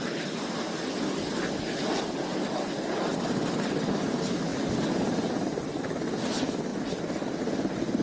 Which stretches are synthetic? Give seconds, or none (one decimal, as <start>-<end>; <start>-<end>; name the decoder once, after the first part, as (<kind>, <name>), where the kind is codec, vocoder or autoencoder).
none